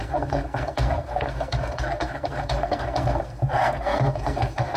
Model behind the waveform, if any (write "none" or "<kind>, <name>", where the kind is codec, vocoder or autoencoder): codec, SNAC